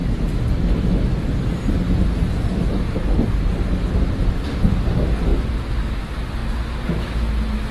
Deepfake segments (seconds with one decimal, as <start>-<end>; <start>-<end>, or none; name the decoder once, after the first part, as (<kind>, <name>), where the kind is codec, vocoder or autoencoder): none